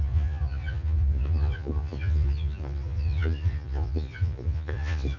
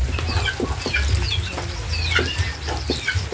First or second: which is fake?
first